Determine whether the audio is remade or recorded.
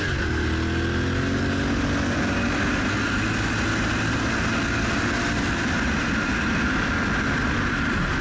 recorded